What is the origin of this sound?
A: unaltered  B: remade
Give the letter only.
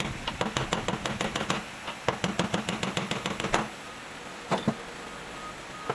A